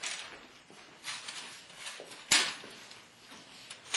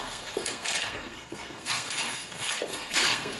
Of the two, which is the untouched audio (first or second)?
first